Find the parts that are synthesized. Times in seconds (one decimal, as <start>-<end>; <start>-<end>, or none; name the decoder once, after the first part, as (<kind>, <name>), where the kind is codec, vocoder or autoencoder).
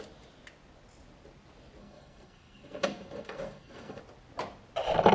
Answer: 1.8-4.0 (codec, SNAC)